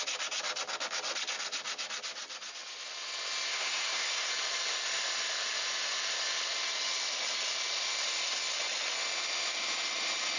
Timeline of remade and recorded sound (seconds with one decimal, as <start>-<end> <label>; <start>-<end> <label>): 0.0-3.5 recorded; 3.5-4.3 remade; 4.3-10.4 recorded

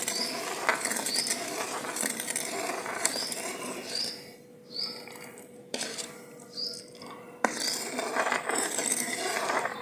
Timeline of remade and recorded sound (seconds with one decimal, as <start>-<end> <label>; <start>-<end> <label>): 0.0-8.1 remade; 8.1-9.3 recorded; 9.3-9.8 remade